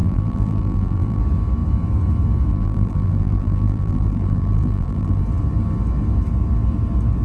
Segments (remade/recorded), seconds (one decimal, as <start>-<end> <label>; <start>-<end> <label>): 0.0-1.2 remade; 1.2-2.5 recorded; 2.5-5.2 remade; 5.2-7.2 recorded